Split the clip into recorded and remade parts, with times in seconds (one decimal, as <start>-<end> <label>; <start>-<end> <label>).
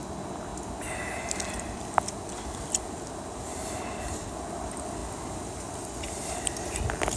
0.0-7.2 recorded